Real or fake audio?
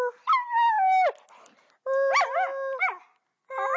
real